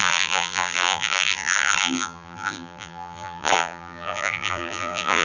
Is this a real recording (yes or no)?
no